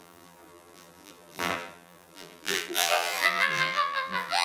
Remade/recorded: remade